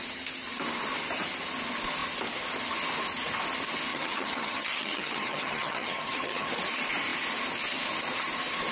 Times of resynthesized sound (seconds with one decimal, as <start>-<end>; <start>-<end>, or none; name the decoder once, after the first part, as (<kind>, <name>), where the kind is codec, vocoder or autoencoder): 3.9-6.5 (vocoder, HiFi-GAN)